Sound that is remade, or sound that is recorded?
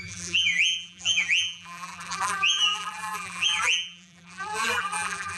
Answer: remade